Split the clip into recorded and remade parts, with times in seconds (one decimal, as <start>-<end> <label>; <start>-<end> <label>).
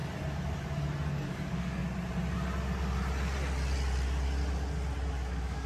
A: 0.0-1.1 recorded; 1.1-1.8 remade; 1.8-5.1 recorded; 5.1-5.7 remade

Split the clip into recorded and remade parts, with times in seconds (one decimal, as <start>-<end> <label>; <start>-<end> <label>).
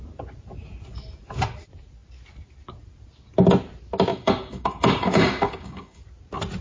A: 0.0-4.1 recorded; 4.1-6.0 remade; 6.0-6.6 recorded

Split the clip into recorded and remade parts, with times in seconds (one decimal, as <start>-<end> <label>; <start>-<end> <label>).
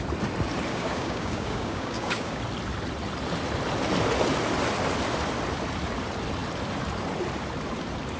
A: 0.0-0.7 recorded; 0.7-2.4 remade; 2.4-8.2 recorded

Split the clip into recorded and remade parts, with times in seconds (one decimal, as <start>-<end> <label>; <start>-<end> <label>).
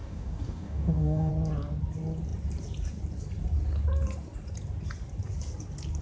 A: 0.0-1.3 remade; 1.3-6.0 recorded